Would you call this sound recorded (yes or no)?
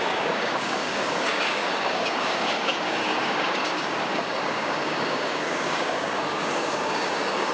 no